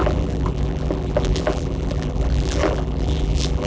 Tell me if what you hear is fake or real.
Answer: fake